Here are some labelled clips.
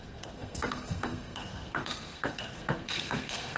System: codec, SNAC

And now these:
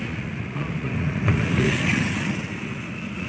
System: vocoder, Vocos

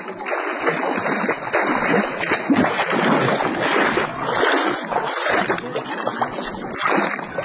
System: none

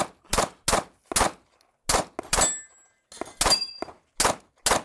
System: none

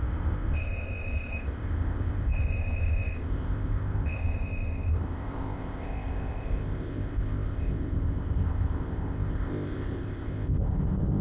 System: codec, ZipCodec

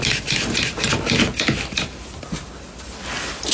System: none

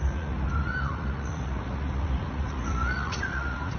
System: vocoder, Vocos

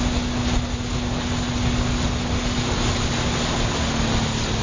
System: none